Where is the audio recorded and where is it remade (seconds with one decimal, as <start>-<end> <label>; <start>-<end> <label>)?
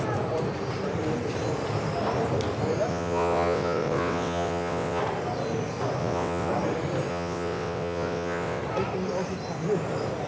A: 0.0-2.9 recorded; 2.9-5.0 remade; 5.0-6.0 recorded; 6.0-6.5 remade; 6.5-7.1 recorded; 7.1-8.6 remade; 8.6-10.3 recorded